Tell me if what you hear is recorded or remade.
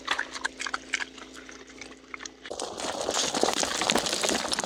recorded